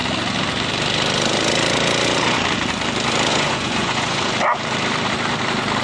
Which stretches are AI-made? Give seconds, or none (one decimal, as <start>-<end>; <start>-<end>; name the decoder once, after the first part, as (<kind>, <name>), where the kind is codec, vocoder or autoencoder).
3.3-4.2 (vocoder, Vocos)